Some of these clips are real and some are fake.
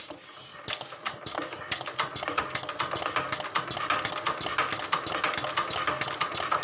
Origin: real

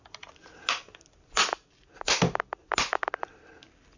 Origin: real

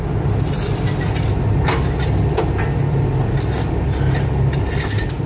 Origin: real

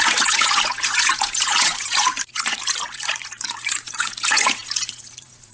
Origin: fake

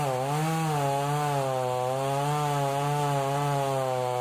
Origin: real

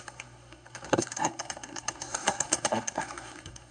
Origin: fake